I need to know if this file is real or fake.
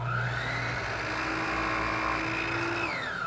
real